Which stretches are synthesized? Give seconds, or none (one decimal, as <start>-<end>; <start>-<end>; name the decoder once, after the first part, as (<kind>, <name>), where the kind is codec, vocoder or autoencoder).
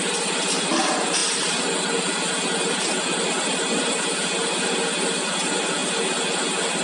none